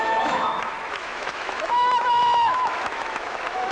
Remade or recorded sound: remade